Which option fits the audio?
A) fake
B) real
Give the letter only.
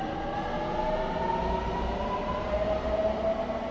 B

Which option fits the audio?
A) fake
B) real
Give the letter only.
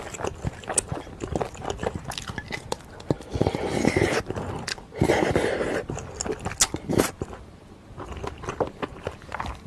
B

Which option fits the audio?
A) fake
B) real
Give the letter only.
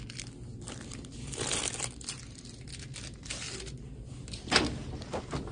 B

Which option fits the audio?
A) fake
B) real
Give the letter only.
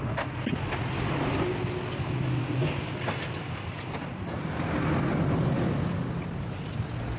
B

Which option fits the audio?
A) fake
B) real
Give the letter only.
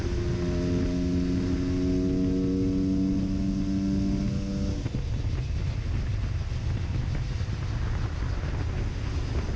B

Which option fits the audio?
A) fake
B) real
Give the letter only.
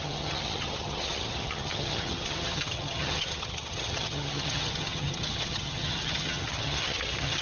A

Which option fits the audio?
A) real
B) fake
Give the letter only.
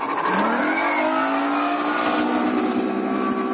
A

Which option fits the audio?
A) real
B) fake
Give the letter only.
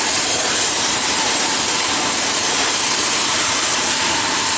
B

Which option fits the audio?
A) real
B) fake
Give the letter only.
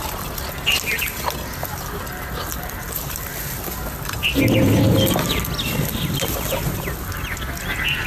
A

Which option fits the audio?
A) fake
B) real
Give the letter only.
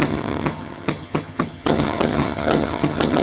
A